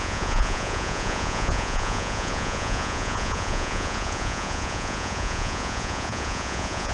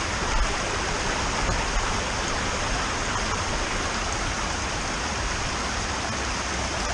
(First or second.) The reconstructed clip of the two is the first